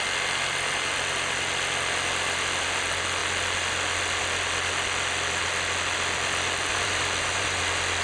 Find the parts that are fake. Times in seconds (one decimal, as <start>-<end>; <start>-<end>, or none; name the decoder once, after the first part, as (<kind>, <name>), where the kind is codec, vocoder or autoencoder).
6.7-7.6 (vocoder, BigVGAN v2)